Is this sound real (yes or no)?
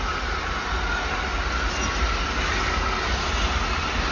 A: yes